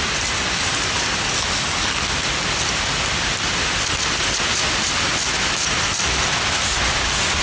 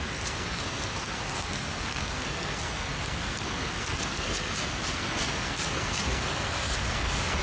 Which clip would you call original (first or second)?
first